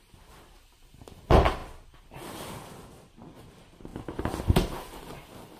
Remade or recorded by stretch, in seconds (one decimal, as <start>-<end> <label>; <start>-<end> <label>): 0.0-5.6 recorded